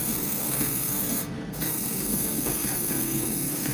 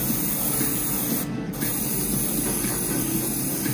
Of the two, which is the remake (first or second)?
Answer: first